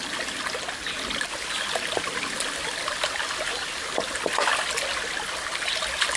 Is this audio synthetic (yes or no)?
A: no